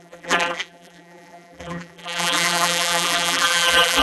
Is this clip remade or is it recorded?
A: remade